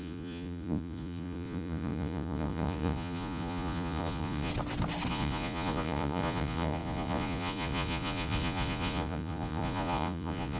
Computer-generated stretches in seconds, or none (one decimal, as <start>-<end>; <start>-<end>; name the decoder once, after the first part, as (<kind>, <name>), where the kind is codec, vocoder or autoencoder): 0.0-4.5 (vocoder, Vocos); 5.1-10.6